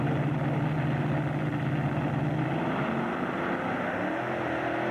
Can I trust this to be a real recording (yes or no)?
yes